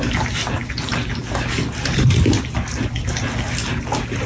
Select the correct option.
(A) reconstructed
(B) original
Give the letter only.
B